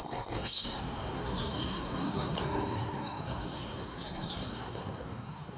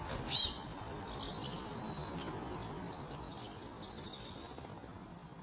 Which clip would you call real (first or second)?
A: second